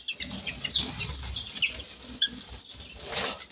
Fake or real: real